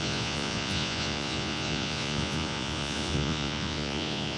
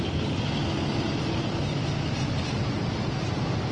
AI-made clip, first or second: first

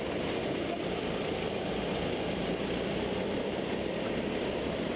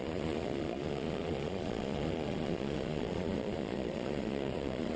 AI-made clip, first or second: second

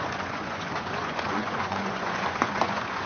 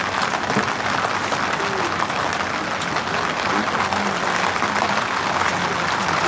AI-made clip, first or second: first